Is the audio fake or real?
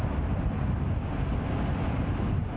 real